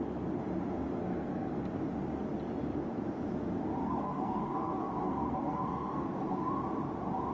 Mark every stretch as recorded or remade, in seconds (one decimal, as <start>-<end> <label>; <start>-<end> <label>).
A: 0.0-1.0 recorded; 1.0-1.6 remade; 1.6-3.8 recorded; 3.8-6.5 remade; 6.5-7.3 recorded